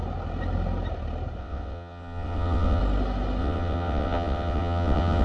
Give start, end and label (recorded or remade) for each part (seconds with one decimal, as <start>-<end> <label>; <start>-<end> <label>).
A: 0.0-1.4 recorded; 1.4-2.8 remade; 2.8-3.4 recorded; 3.4-5.2 remade